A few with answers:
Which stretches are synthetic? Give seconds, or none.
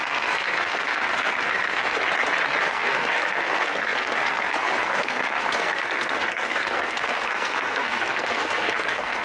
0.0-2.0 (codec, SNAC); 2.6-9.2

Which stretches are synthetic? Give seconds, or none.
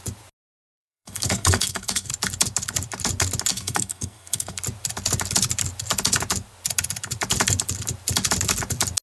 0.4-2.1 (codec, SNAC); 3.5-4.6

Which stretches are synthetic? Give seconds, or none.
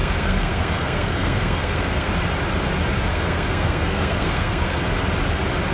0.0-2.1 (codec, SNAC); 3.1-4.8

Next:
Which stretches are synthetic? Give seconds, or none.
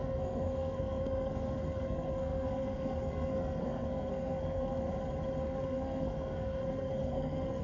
0.0-4.9 (codec, SNAC); 5.4-7.6